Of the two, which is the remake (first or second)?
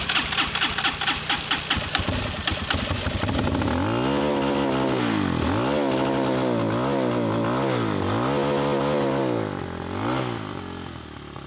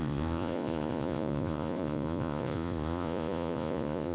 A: second